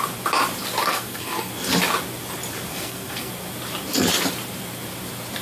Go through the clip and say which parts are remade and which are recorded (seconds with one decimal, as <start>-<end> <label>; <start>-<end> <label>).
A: 0.0-0.9 recorded; 0.9-1.5 remade; 1.5-2.7 recorded; 2.7-3.3 remade; 3.3-5.4 recorded